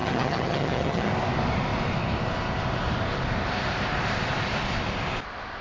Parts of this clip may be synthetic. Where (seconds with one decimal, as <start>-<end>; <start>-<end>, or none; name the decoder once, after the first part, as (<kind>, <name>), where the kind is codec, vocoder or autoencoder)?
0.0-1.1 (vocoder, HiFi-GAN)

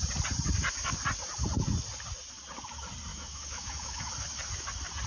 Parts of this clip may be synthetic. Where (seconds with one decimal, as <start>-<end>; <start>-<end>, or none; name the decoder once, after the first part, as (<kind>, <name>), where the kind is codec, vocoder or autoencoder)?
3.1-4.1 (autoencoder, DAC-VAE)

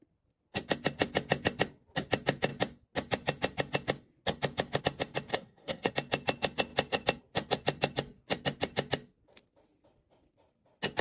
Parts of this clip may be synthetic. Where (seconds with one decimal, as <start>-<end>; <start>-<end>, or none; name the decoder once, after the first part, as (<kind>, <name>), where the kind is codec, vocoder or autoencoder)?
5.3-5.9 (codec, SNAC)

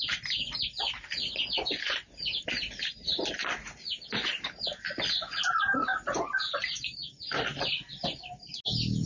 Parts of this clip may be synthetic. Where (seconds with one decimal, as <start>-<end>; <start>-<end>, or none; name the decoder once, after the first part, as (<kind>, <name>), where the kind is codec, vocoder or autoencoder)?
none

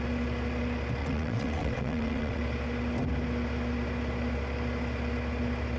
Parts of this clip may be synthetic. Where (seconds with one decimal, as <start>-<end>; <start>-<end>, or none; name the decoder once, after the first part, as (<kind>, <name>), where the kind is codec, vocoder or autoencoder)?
1.0-2.4 (vocoder, WaveNeXt)